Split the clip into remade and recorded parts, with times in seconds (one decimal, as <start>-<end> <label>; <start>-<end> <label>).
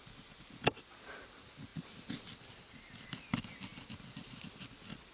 0.0-1.7 recorded; 1.7-2.3 remade; 2.3-5.1 recorded